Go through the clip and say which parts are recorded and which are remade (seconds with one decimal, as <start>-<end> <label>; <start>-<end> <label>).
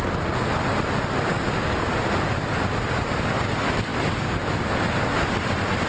0.0-1.3 recorded; 1.3-1.9 remade; 1.9-5.9 recorded